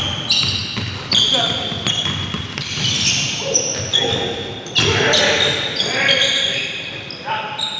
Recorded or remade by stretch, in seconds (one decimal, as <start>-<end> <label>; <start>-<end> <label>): 0.0-0.6 remade; 0.6-4.9 recorded; 4.9-7.8 remade